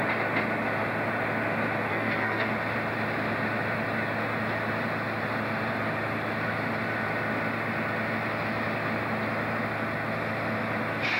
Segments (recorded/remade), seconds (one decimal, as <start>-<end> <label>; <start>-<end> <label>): 0.0-1.9 recorded; 1.9-2.5 remade; 2.5-11.2 recorded